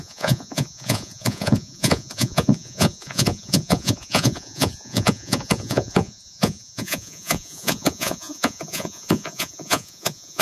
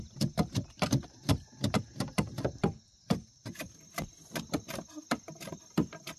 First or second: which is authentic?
second